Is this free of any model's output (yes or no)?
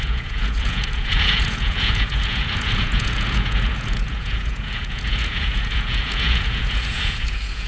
no